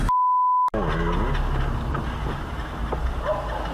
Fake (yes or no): no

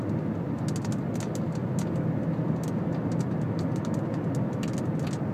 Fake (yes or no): no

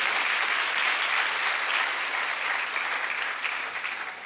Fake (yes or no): no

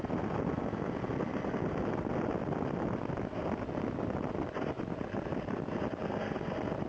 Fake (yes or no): no